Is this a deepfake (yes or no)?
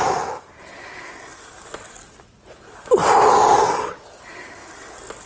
no